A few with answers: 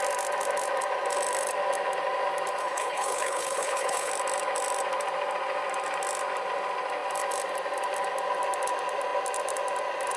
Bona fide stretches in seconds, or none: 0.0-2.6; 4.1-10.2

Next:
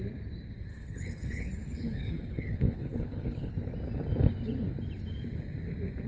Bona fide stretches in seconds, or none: 0.0-0.7; 3.5-6.1

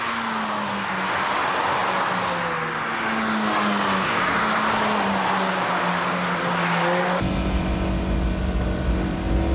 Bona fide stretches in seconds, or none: 0.0-9.5